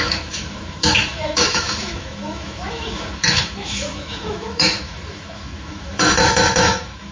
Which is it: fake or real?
fake